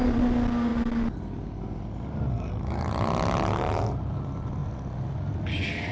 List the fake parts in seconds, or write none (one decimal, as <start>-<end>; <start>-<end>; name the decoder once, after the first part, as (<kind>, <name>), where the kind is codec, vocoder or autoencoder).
none